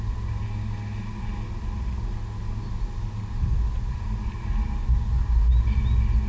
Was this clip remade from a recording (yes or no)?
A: no